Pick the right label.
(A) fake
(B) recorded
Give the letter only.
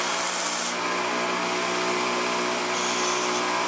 B